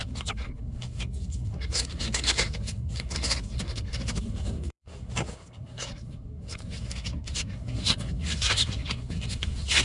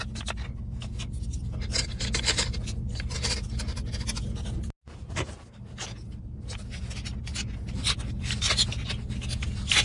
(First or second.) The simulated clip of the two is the first